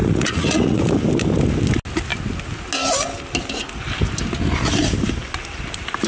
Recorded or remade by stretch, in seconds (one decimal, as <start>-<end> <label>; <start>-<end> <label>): 0.0-0.8 remade; 0.8-6.1 recorded